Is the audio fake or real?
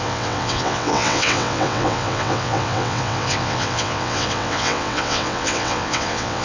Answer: fake